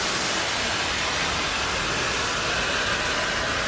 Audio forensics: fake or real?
real